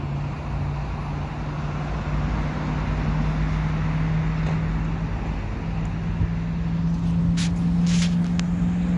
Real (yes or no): yes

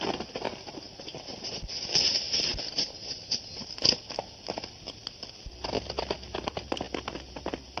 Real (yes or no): yes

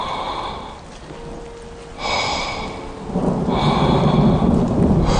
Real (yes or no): yes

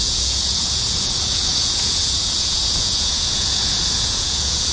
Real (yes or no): no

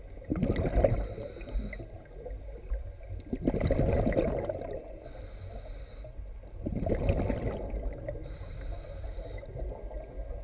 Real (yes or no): yes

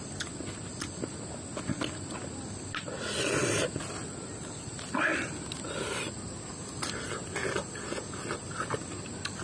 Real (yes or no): yes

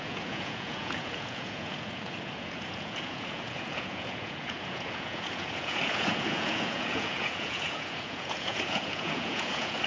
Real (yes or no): no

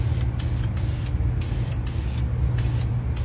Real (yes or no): yes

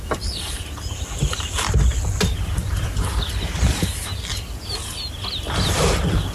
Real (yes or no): yes